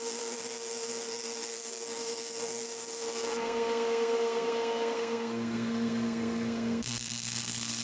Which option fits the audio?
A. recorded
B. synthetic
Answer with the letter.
B